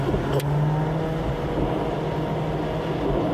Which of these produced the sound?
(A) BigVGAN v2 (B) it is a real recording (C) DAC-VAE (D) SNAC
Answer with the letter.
B